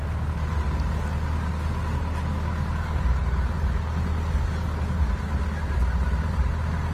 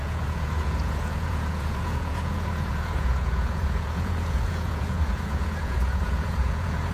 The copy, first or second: second